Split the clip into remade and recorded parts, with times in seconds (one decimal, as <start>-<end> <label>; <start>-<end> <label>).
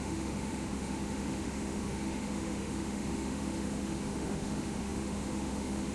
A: 0.0-5.9 remade